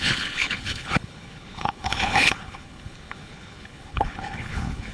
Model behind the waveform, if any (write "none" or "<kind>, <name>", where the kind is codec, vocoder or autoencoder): codec, HILCodec